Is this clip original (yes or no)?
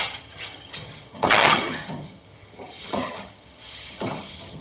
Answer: no